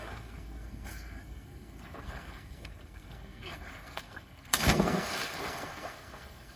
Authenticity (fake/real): fake